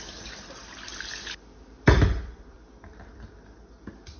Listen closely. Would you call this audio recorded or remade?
recorded